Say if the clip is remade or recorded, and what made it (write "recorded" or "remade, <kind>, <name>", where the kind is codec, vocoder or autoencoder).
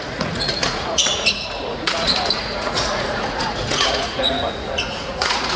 remade, vocoder, Vocos